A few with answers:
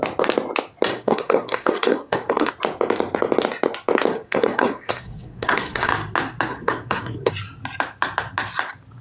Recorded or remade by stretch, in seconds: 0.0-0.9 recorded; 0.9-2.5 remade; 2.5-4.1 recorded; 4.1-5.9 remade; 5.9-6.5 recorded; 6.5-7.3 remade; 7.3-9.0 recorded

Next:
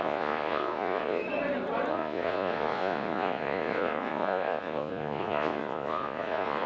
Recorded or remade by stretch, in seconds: 0.0-1.2 remade; 1.2-1.9 recorded; 1.9-6.7 remade

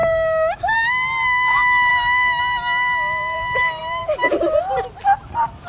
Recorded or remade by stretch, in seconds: 0.0-0.6 remade; 0.6-1.9 recorded; 1.9-2.4 remade; 2.4-5.7 recorded

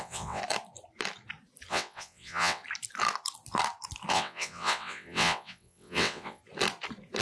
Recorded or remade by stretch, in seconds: 0.0-0.4 remade; 0.4-1.7 recorded; 1.7-2.6 remade; 2.6-4.1 recorded; 4.1-6.4 remade; 6.4-7.2 recorded

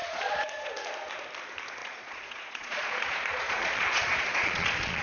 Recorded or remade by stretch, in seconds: 0.0-0.7 remade; 0.7-1.8 recorded; 1.8-5.0 remade

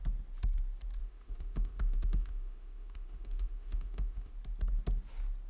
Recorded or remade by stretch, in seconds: 0.0-1.0 recorded; 1.0-4.3 remade; 4.3-5.5 recorded

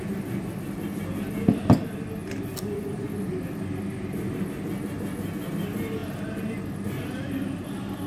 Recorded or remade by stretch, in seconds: 0.0-8.1 recorded